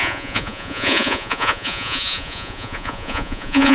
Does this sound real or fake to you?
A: fake